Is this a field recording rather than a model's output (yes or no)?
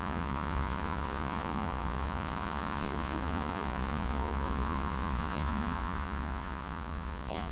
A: no